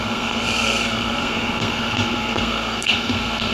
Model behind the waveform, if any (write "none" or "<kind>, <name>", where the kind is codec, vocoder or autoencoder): codec, SNAC